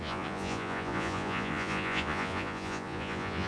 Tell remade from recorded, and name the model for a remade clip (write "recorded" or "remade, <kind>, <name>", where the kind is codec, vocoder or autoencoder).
remade, vocoder, Vocos